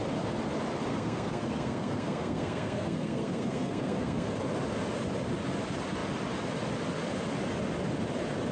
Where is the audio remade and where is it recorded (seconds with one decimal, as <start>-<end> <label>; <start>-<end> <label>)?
0.0-0.9 recorded; 0.9-4.3 remade; 4.3-8.5 recorded